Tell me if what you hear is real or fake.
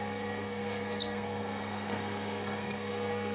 fake